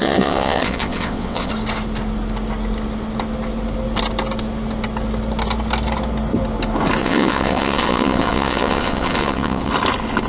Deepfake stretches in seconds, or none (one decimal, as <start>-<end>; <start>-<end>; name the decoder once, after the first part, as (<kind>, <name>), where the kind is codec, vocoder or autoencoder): 0.0-1.5 (vocoder, WaveNeXt); 7.0-9.7